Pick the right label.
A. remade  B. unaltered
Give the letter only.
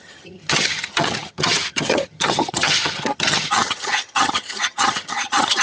A